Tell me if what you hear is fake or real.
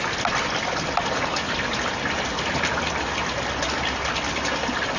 real